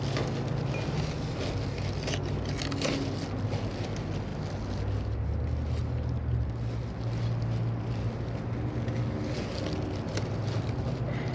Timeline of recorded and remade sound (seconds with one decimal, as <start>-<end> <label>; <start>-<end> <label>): 0.0-11.3 recorded